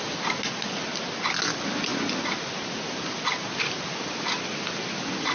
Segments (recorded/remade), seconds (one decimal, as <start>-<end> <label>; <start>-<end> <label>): 0.0-5.3 recorded